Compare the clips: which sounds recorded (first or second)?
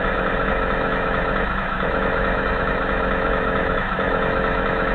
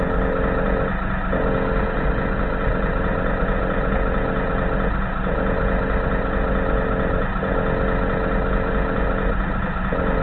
second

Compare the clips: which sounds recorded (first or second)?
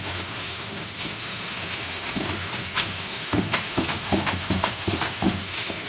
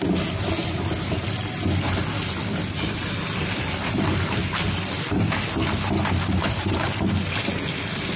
second